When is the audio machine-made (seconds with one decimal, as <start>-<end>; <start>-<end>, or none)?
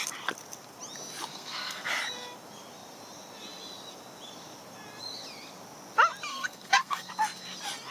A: 1.3-1.9; 6.3-7.1